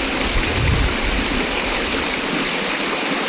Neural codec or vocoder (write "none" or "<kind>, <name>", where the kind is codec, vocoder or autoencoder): none